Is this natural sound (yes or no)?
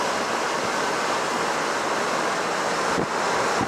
yes